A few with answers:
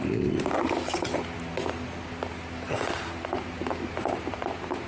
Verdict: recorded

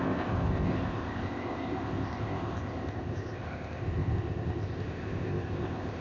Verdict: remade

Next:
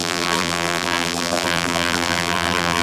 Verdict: remade